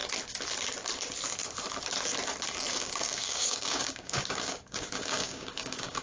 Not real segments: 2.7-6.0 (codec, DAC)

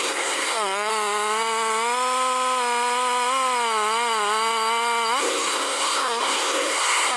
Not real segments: 0.0-0.9 (codec, SNAC); 5.2-7.2

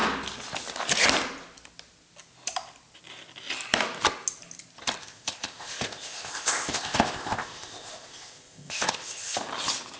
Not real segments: 5.0-9.4 (codec, ZipCodec)

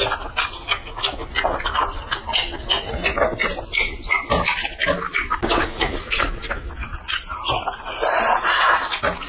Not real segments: none

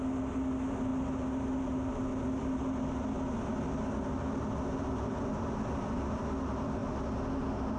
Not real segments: none

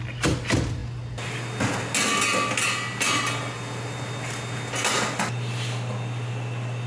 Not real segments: none

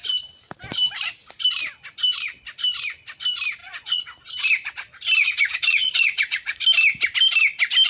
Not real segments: 3.6-4.2 (vocoder, Vocos); 5.2-6.6